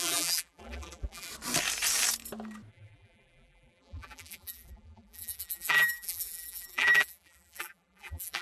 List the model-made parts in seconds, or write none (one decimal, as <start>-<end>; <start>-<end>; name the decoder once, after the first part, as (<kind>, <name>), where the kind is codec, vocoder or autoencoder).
0.0-1.3 (vocoder, BigVGAN v2); 2.7-8.4